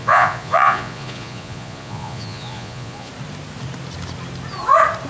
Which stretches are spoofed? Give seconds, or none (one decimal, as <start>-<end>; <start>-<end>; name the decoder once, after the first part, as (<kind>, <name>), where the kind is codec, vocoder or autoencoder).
0.0-3.1 (vocoder, Vocos)